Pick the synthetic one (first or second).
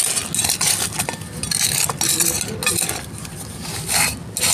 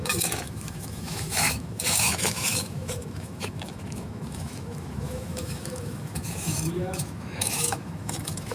second